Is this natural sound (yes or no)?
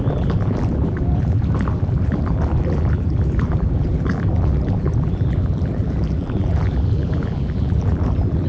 no